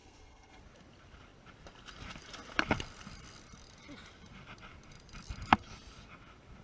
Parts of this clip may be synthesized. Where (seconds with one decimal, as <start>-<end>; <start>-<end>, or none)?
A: 0.0-0.6